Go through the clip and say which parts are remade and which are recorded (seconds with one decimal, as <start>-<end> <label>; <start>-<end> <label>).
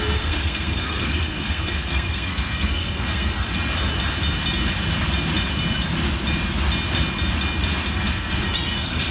0.0-3.5 remade; 3.5-7.9 recorded; 7.9-9.1 remade